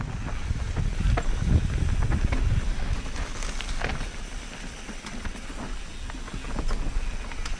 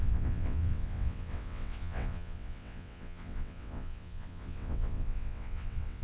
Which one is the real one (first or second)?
first